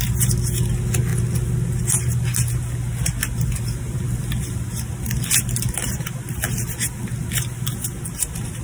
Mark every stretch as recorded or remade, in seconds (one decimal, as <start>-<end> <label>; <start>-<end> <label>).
0.0-8.6 recorded